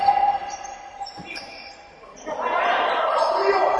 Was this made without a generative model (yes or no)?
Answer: no